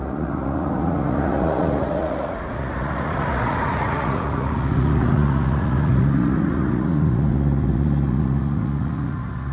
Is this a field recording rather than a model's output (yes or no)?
no